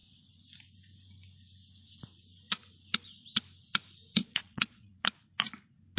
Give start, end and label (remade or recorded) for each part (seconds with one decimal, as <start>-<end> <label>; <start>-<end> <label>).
0.0-4.2 recorded; 4.2-5.1 remade; 5.1-6.0 recorded